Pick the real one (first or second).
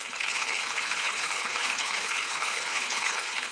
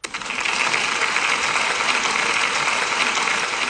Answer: second